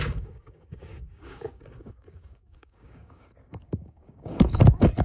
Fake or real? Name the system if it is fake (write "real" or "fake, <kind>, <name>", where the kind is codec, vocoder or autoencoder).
fake, codec, DAC